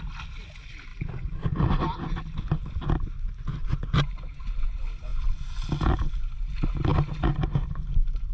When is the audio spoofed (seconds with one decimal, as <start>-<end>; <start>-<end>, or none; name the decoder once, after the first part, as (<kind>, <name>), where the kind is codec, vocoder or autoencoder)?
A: none